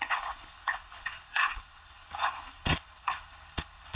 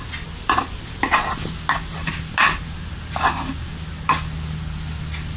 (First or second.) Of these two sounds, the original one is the second